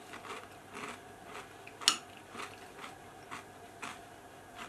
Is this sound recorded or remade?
recorded